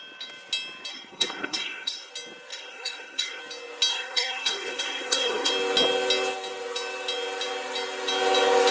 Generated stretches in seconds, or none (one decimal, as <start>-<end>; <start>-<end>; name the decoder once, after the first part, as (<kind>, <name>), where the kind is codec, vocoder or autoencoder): 0.9-2.1 (codec, SNAC); 2.5-3.4; 3.9-5.5